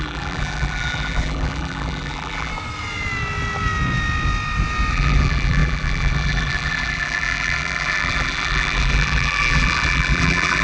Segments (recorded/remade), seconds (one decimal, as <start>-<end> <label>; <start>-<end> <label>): 0.0-2.5 remade; 2.5-4.9 recorded; 4.9-10.6 remade